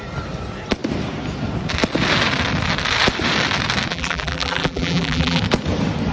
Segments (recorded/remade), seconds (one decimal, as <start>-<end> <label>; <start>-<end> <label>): 0.0-3.9 recorded; 3.9-5.4 remade; 5.4-6.1 recorded